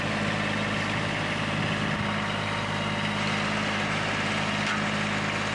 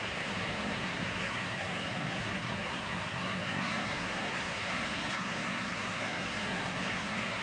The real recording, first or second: first